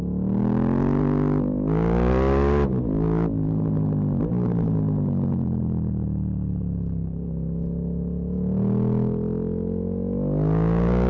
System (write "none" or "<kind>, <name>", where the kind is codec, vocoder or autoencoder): none